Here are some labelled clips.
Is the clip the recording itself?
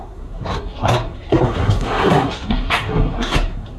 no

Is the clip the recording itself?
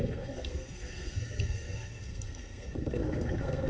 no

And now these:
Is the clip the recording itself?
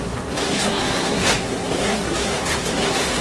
no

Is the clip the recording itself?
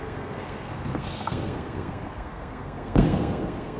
no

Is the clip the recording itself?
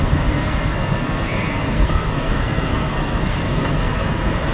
no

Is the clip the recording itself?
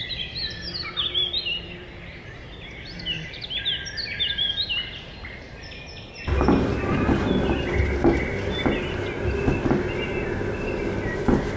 yes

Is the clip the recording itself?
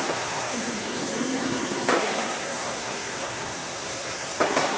no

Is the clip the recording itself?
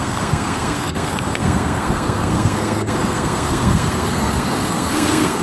no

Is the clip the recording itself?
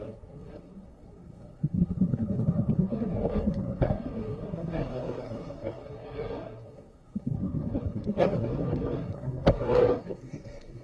no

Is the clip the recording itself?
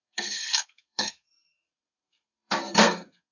no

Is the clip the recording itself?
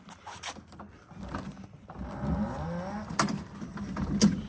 yes